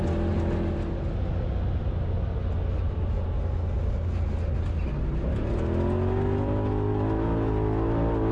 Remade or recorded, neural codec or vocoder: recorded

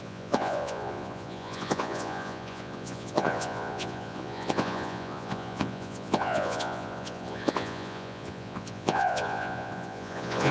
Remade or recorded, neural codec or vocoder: remade, vocoder, Vocos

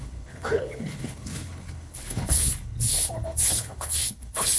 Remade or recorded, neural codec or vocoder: remade, codec, HILCodec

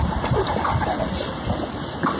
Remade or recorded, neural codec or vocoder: recorded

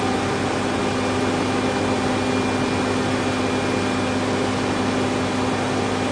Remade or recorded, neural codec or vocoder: recorded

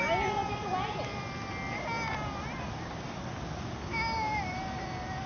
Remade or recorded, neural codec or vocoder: recorded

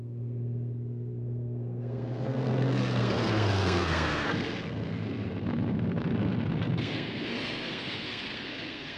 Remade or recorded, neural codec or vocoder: remade, codec, SNAC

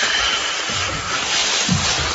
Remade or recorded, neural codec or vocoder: recorded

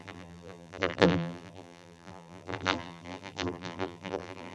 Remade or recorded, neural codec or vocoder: remade, vocoder, BigVGAN v2